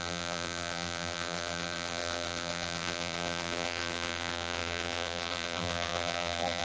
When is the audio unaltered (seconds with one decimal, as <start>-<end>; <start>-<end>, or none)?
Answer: none